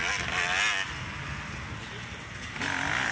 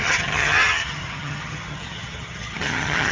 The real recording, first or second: first